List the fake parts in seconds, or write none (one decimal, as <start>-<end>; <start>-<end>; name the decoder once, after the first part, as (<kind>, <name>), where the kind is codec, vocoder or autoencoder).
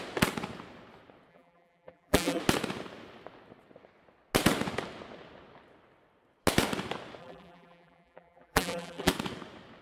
1.3-2.4 (vocoder, BigVGAN v2); 7.2-9.1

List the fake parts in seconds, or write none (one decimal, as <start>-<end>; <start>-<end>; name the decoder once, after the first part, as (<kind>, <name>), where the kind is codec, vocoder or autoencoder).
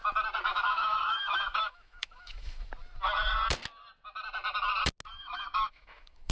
0.5-2.7 (autoencoder, DAC-VAE); 5.2-6.3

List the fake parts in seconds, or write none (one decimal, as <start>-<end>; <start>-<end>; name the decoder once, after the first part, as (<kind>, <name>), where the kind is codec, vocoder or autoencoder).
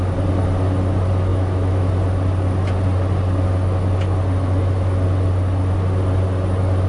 1.3-1.9 (autoencoder, DAC-VAE)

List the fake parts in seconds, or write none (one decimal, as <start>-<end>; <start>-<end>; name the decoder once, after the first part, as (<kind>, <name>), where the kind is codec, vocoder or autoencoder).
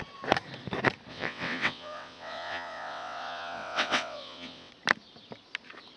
1.1-4.7 (vocoder, WaveNeXt)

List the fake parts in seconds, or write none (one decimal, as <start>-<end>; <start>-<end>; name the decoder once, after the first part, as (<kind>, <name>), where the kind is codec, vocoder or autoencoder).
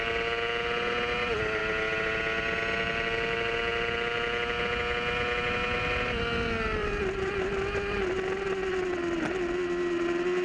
6.8-7.3 (vocoder, BigVGAN v2)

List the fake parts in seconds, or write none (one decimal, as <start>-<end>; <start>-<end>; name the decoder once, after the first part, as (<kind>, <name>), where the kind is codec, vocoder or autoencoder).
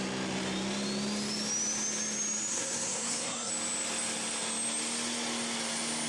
2.5-3.5 (codec, SNAC)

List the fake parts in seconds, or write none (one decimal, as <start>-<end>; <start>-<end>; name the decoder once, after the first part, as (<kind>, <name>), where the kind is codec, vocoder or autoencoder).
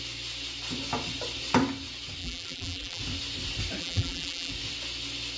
2.2-3.0 (vocoder, BigVGAN v2); 3.8-4.5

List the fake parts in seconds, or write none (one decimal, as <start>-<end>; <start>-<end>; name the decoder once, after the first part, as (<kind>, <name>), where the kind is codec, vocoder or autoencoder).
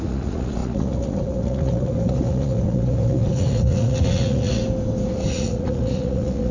0.0-4.6 (vocoder, Vocos); 5.3-6.5